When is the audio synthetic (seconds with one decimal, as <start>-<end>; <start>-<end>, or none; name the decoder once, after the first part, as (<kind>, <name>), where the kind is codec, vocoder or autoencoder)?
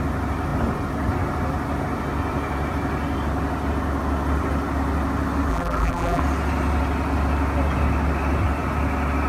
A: 5.5-6.2 (vocoder, BigVGAN v2)